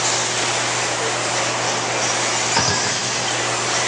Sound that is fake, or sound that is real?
real